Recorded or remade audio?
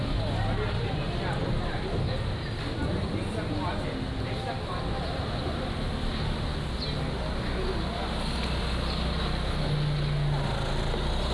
recorded